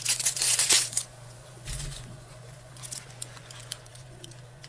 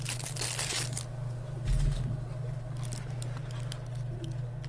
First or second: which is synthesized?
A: first